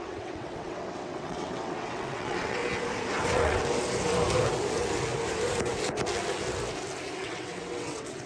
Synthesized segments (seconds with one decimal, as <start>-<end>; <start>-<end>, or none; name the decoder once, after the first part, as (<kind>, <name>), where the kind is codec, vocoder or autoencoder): 0.0-2.6 (vocoder, WaveNeXt); 3.2-3.6; 7.2-8.3